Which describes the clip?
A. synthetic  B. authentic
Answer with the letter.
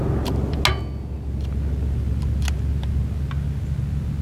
B